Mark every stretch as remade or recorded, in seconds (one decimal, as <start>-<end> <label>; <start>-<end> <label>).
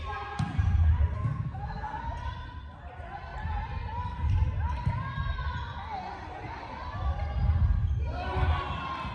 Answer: 0.0-1.2 recorded; 1.2-2.0 remade; 2.0-9.1 recorded